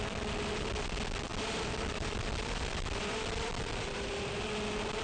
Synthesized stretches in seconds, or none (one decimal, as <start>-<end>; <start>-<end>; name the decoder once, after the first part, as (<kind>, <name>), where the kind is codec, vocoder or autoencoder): 1.3-4.3 (vocoder, BigVGAN v2)